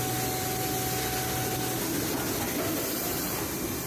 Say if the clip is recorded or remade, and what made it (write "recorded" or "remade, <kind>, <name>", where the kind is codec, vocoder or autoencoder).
recorded